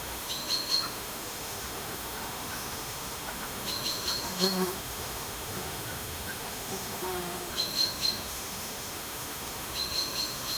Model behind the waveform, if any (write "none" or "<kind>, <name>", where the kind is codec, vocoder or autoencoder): autoencoder, DAC-VAE